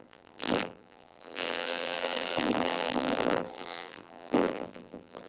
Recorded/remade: remade